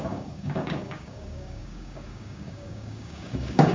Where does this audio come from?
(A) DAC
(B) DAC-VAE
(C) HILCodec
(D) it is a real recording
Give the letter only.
A